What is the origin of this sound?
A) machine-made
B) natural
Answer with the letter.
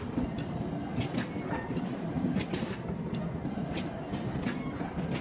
B